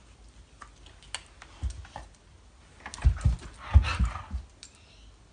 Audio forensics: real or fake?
real